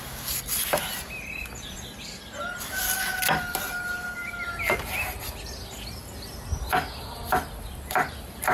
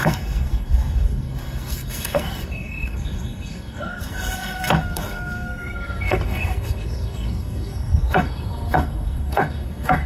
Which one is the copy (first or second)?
second